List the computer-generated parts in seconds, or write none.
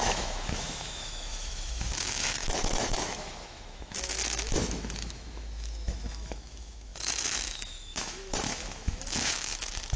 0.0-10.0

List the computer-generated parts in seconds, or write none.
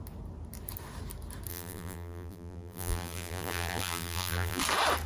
1.5-4.6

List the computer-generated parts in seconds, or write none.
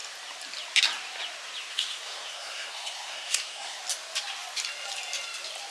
1.7-3.8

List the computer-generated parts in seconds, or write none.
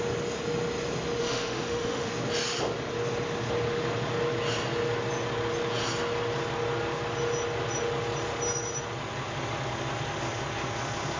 1.2-2.1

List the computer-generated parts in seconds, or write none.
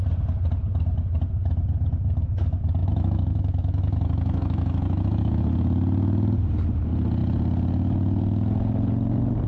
2.8-5.5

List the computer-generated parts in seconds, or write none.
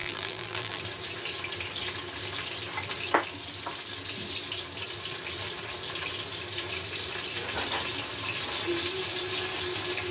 0.0-0.8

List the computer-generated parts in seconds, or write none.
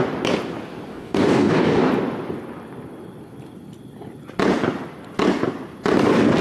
0.9-1.9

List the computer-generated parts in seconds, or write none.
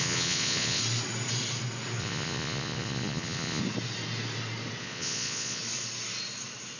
0.0-0.8; 2.0-3.6; 4.8-5.6